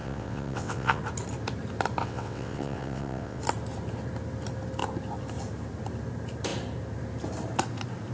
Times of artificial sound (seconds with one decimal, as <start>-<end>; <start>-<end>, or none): 0.0-1.0; 2.0-3.4